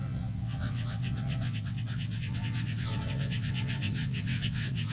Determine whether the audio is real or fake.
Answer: fake